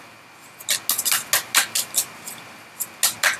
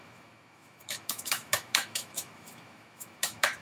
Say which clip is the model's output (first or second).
second